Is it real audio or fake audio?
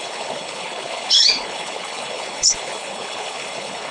fake